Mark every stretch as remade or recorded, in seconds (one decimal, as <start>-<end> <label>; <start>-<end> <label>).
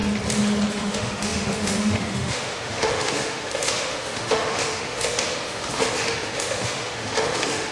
0.0-0.7 recorded; 0.7-7.7 remade